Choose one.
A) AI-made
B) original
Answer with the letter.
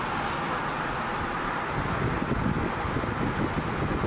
B